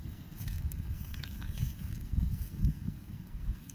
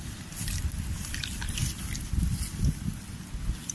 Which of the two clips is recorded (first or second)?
second